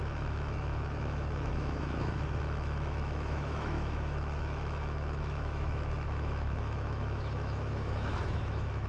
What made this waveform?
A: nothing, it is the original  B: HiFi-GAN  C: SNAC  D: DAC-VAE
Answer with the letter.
D